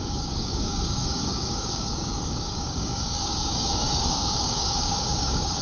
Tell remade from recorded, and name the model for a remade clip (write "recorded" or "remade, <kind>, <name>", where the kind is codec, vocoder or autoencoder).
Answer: remade, codec, DAC